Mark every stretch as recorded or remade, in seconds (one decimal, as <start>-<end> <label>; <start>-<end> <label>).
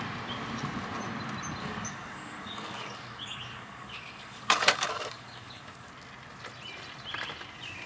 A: 0.0-1.6 recorded; 1.6-5.9 remade; 5.9-7.9 recorded